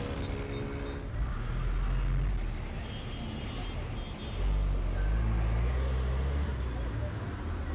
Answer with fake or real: real